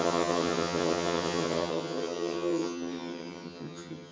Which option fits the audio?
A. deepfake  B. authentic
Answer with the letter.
A